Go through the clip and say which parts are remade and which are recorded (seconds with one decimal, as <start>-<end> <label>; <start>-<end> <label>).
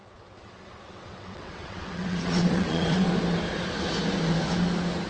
0.0-3.1 remade; 3.1-5.1 recorded